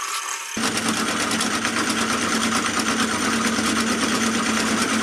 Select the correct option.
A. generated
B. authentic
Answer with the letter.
B